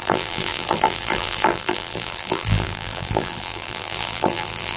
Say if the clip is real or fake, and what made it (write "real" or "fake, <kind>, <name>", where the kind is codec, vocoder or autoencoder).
fake, vocoder, BigVGAN v2